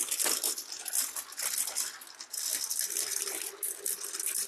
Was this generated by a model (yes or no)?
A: no